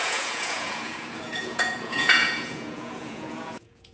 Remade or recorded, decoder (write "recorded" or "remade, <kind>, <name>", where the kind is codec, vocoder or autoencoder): remade, vocoder, Vocos